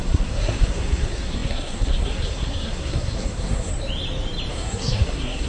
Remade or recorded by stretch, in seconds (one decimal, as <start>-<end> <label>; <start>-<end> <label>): 0.0-3.7 remade; 3.7-4.5 recorded; 4.5-5.5 remade